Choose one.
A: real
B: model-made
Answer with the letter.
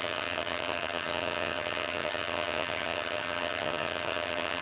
B